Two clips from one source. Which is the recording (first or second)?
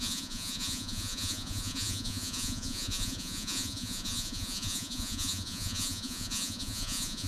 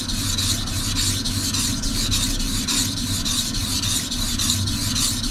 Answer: second